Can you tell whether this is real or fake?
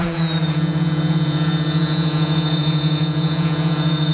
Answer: fake